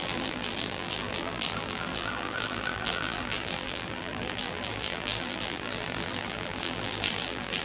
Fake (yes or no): yes